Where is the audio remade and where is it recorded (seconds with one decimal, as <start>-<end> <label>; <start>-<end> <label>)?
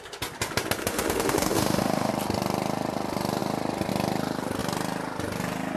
0.0-0.8 recorded; 0.8-2.1 remade; 2.1-5.8 recorded